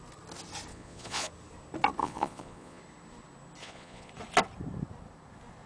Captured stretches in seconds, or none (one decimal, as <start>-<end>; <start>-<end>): 0.0-0.7; 1.3-2.0; 2.8-3.6; 4.1-5.7